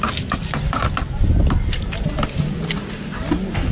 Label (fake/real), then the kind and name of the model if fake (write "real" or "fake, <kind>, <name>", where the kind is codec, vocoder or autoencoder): real